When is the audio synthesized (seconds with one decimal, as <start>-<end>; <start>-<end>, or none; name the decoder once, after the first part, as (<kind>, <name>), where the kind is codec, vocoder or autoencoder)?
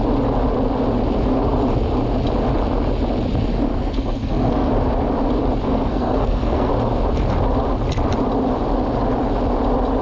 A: 3.7-4.7 (codec, SNAC); 5.7-6.7